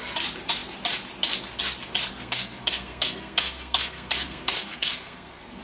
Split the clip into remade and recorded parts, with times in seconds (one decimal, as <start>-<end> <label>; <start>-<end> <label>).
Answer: 0.0-2.1 recorded; 2.1-5.6 remade